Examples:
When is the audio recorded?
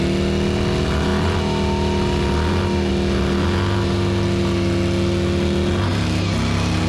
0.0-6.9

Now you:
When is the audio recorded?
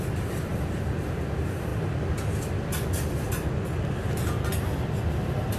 0.5-1.0; 1.7-5.1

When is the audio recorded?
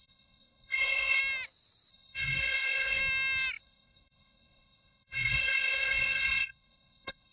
1.2-1.9; 3.0-3.6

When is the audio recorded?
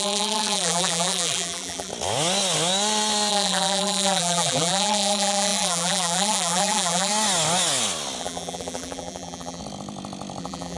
1.9-3.3; 7.1-8.2; 9.6-10.4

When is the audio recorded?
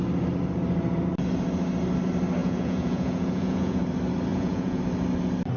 0.0-2.4; 3.8-4.3; 4.8-5.6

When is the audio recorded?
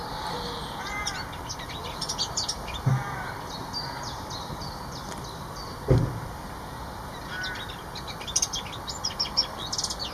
0.0-1.8; 2.9-10.1